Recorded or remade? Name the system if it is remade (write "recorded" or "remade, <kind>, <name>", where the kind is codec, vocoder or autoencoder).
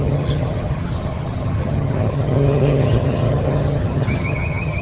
remade, vocoder, HiFi-GAN